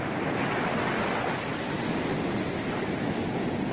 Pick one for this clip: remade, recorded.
recorded